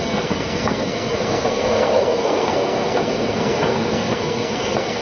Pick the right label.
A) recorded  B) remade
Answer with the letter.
B